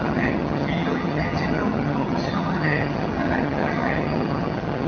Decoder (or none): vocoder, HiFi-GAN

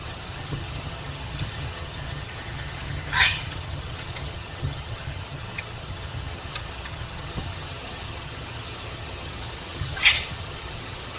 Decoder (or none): vocoder, HiFi-GAN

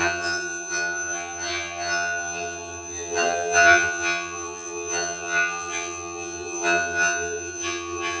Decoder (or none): vocoder, HiFi-GAN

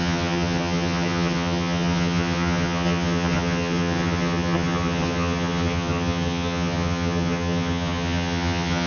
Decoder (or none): vocoder, HiFi-GAN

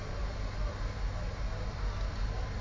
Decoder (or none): none